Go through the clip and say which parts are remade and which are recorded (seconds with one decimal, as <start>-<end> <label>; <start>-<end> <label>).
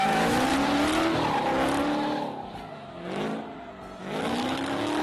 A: 0.0-0.5 remade; 0.5-2.7 recorded; 2.7-3.3 remade; 3.3-4.0 recorded; 4.0-5.0 remade